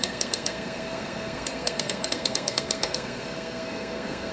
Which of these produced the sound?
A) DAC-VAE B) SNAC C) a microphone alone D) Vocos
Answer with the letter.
B